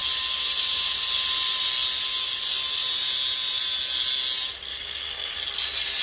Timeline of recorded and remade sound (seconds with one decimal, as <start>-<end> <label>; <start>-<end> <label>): 0.0-4.7 recorded; 4.7-5.4 remade; 5.4-6.0 recorded